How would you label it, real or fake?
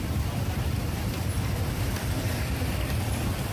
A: fake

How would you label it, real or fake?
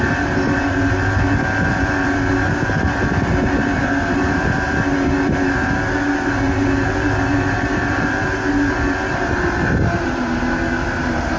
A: fake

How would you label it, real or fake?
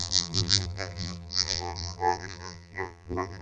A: fake